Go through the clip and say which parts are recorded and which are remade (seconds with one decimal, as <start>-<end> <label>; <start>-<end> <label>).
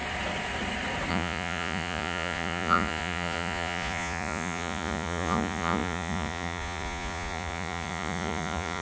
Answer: 0.0-1.1 recorded; 1.1-8.8 remade